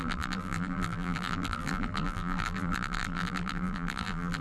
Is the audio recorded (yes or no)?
no